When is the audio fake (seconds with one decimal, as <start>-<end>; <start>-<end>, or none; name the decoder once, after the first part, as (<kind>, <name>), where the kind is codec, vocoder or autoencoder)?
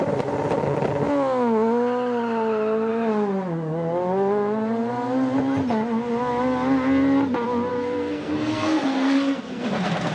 7.7-10.1 (codec, SNAC)